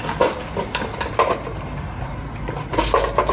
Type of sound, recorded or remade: recorded